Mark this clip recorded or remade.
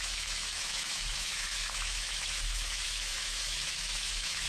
remade